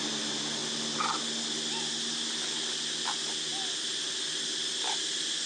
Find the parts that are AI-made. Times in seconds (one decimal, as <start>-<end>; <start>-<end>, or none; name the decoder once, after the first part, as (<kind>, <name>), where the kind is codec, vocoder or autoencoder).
none